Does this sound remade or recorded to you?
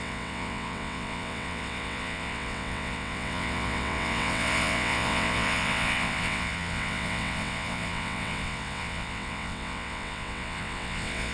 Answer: remade